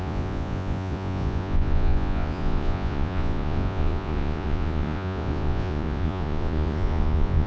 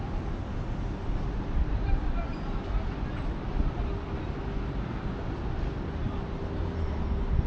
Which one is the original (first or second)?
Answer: second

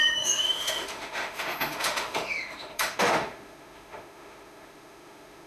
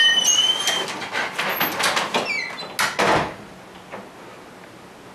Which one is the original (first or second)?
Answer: second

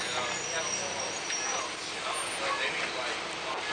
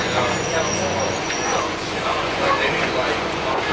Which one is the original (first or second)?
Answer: first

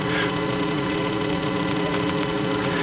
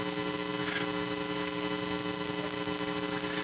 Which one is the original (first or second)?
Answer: second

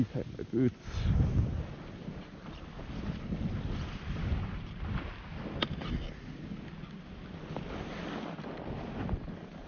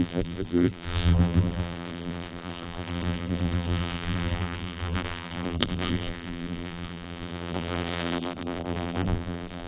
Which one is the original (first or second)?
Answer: first